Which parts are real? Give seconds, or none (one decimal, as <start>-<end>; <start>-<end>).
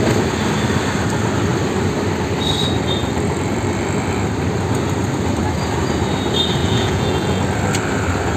0.0-6.6; 7.4-8.4